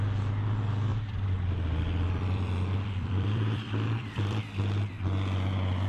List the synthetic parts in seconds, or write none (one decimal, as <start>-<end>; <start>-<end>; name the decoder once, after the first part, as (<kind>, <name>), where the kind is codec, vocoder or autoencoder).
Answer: 0.9-4.4 (vocoder, BigVGAN v2)